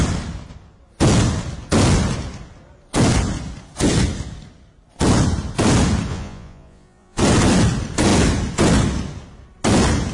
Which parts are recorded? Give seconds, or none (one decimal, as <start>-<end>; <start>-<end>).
0.0-6.1; 7.2-10.1